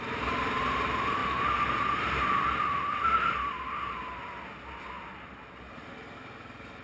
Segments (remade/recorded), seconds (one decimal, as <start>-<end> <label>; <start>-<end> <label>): 0.0-6.8 recorded